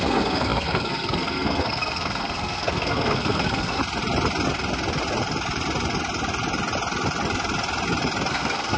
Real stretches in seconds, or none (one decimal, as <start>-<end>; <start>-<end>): 3.8-8.3